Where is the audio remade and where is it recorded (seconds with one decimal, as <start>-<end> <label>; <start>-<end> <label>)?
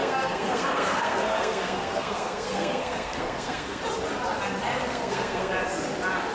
0.0-3.8 remade; 3.8-4.9 recorded; 4.9-5.5 remade; 5.5-6.3 recorded